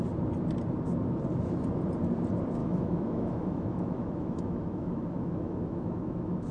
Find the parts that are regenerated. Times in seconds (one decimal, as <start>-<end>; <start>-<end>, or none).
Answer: 2.6-6.5